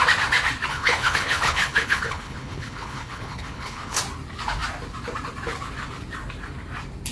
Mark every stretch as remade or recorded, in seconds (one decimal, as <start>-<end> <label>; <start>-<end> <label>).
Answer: 0.0-0.7 recorded; 0.7-4.0 remade; 4.0-7.1 recorded